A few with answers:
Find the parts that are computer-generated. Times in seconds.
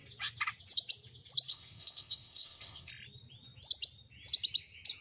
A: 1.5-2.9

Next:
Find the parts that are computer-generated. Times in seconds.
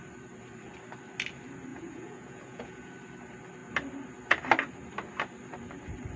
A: 1.7-2.9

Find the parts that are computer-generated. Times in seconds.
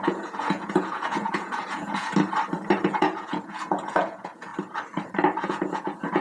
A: 0.0-2.1; 2.8-4.5; 5.4-6.2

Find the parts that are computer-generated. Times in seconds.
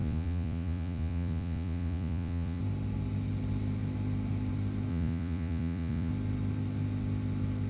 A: 0.0-2.6; 4.9-6.1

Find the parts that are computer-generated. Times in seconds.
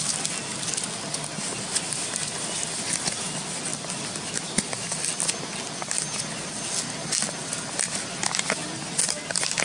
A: none